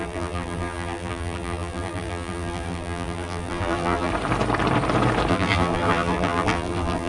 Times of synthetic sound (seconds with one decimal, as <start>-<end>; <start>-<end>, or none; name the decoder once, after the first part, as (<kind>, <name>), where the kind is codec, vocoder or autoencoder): 0.0-4.1 (vocoder, BigVGAN v2); 5.3-7.1